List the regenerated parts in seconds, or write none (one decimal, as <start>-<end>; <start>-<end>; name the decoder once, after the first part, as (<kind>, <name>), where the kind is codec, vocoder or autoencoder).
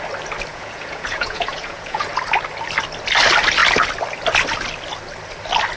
0.5-2.1 (vocoder, Vocos)